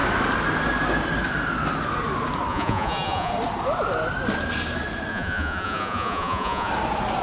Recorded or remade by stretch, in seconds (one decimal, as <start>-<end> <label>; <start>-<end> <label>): 0.0-2.5 recorded; 2.5-3.3 remade; 3.3-5.1 recorded; 5.1-6.7 remade; 6.7-7.2 recorded